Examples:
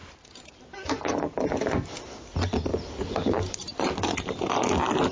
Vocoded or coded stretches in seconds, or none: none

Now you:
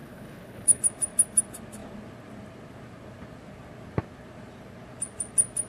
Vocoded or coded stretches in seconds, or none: 0.0-0.8 (codec, HILCodec)

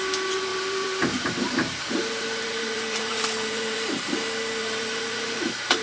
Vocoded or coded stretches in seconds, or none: 0.5-4.0 (vocoder, BigVGAN v2); 4.6-5.8

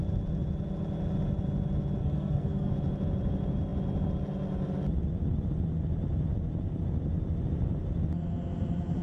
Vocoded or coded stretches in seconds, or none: 2.0-2.7 (codec, SNAC)

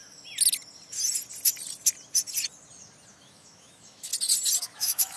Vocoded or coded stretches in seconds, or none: 3.1-4.1 (autoencoder, DAC-VAE); 4.6-5.2

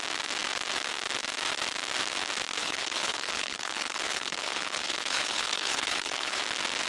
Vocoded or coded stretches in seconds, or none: 2.6-6.4 (codec, HILCodec)

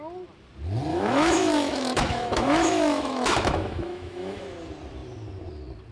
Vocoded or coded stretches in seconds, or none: 0.9-4.4 (autoencoder, DAC-VAE)